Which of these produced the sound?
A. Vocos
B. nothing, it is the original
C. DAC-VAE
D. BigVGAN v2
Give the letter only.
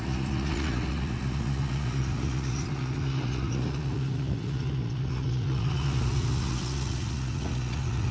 A